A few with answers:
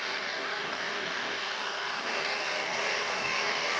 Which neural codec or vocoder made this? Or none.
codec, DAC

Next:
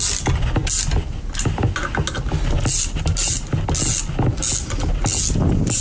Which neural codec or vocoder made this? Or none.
none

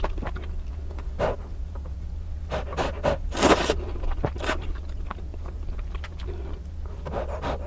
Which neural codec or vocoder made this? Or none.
none